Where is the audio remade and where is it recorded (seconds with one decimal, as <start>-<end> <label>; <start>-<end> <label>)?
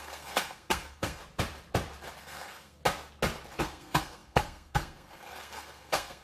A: 0.0-1.2 remade; 1.2-2.2 recorded; 2.2-2.8 remade; 2.8-3.6 recorded; 3.6-6.2 remade